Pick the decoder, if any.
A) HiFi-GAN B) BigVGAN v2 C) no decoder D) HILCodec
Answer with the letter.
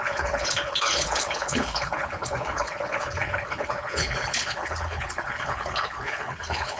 D